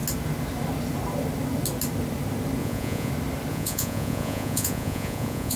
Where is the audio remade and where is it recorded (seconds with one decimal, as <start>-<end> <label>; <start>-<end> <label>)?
0.0-2.6 recorded; 2.6-3.1 remade; 3.1-3.5 recorded; 3.5-5.6 remade